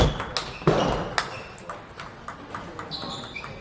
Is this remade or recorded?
recorded